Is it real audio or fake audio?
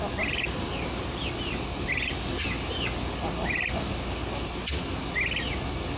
real